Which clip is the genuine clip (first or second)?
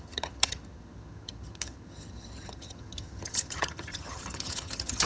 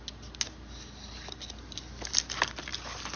second